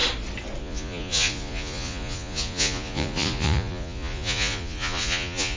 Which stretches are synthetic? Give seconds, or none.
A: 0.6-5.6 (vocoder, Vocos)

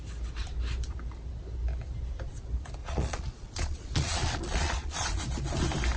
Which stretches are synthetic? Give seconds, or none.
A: 2.8-5.2 (vocoder, Vocos)

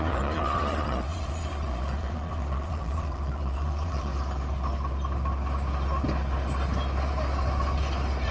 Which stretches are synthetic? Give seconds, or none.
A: 0.0-4.1 (vocoder, Vocos)

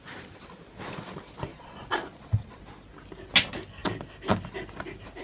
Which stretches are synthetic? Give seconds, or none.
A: 1.5-2.6 (vocoder, Vocos)